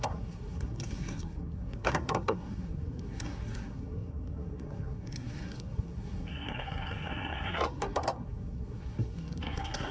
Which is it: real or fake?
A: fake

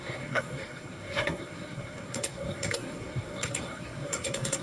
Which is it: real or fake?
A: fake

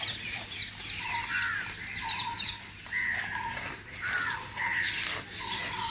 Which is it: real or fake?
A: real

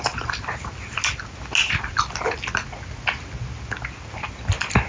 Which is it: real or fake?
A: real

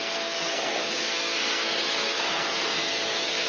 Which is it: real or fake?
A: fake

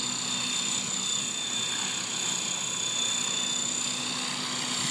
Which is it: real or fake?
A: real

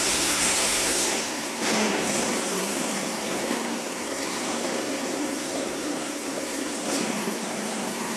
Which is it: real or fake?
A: fake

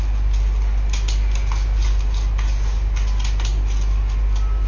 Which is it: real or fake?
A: real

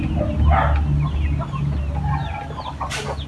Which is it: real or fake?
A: real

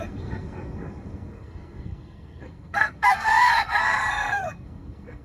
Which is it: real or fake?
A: fake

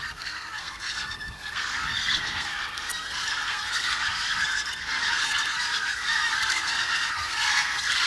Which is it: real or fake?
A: fake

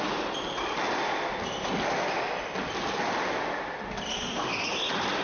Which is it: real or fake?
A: real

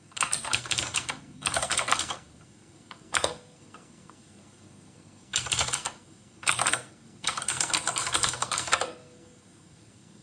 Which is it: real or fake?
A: fake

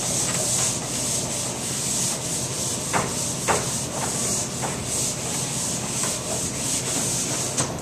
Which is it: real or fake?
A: real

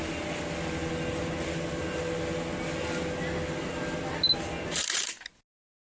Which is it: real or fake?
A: real